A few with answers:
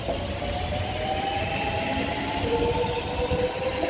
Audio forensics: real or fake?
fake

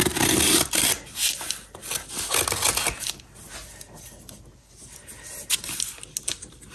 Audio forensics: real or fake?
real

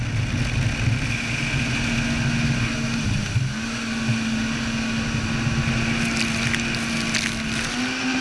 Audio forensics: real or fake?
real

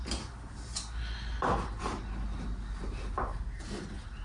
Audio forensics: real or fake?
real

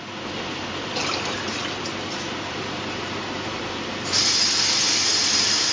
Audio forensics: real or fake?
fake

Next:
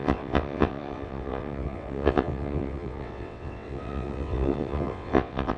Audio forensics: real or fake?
fake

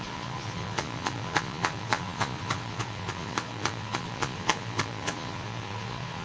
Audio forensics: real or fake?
fake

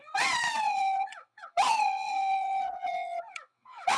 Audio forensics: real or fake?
fake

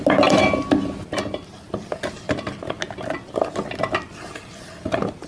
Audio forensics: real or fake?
real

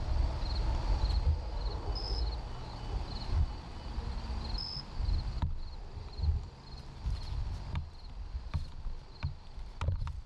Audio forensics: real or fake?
real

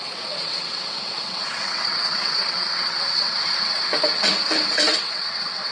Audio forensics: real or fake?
fake